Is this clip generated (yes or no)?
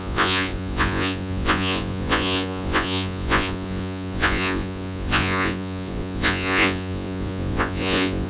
yes